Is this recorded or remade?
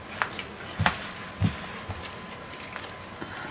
recorded